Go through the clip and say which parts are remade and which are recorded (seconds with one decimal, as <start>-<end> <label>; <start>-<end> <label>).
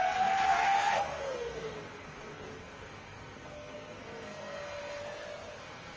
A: 0.0-5.0 remade; 5.0-5.6 recorded; 5.6-6.0 remade